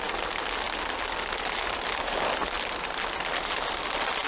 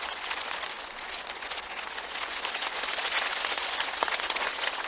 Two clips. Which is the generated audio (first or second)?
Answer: second